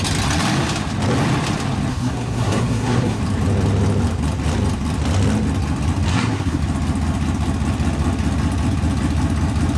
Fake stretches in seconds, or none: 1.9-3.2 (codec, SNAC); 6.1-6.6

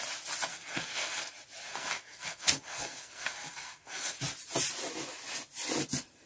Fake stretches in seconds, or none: 0.5-1.2 (codec, SNAC); 1.7-4.1

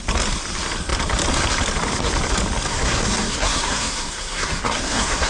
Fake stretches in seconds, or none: 2.7-5.3 (codec, SNAC)

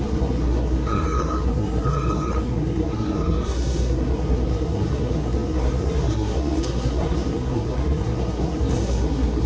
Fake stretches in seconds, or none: 0.0-9.5 (codec, SNAC)

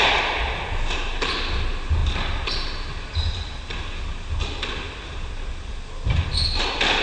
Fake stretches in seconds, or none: none